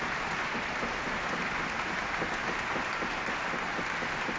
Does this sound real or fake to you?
real